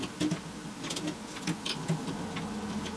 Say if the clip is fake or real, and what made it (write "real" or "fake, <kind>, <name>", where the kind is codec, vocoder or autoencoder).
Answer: real